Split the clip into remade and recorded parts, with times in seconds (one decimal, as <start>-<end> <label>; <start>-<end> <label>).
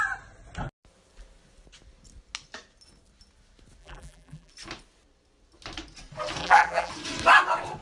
0.0-3.8 recorded; 3.8-4.5 remade; 4.5-6.4 recorded; 6.4-6.9 remade; 6.9-7.8 recorded